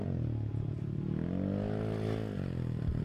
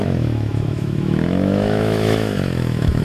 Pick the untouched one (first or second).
first